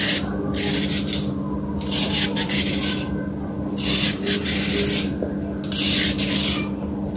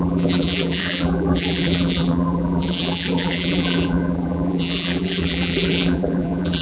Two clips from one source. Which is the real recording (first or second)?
first